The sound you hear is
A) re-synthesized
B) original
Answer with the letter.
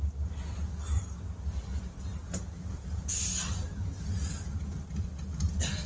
B